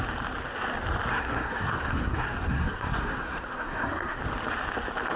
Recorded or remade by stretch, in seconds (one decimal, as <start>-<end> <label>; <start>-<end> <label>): 0.0-1.1 recorded; 1.1-4.2 remade; 4.2-5.2 recorded